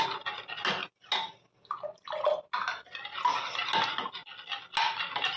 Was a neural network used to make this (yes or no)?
no